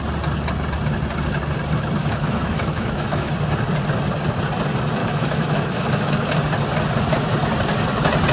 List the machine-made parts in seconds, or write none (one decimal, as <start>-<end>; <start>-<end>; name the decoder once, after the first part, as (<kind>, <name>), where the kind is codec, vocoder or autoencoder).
2.0-3.3 (autoencoder, DAC-VAE); 5.0-6.1